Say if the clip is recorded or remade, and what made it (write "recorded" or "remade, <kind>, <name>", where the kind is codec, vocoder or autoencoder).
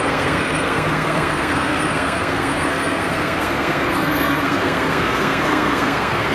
remade, codec, SNAC